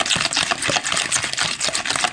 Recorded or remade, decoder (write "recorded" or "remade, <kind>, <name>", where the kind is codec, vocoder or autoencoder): recorded